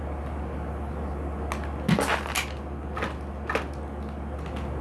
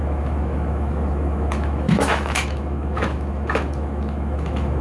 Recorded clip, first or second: first